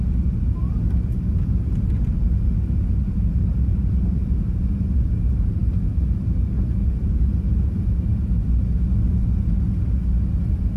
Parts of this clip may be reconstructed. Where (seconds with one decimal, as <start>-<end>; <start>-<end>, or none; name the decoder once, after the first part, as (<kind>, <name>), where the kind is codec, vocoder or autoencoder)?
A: 1.1-5.1 (vocoder, BigVGAN v2)